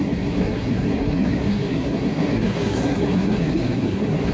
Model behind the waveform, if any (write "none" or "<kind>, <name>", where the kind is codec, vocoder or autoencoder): codec, SNAC